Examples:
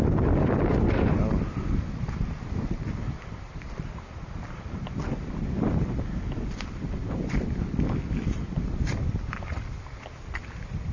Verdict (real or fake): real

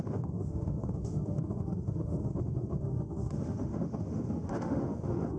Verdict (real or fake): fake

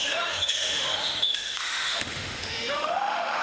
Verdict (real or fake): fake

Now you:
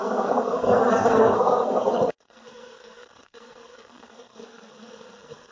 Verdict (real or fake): fake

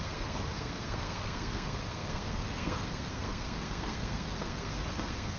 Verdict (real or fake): fake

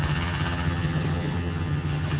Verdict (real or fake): fake